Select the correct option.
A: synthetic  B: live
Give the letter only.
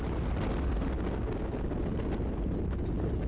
B